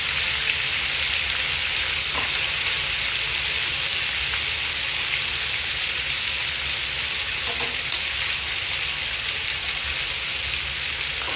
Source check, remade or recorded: recorded